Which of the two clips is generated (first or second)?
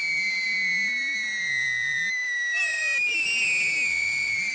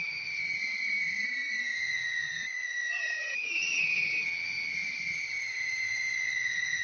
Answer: second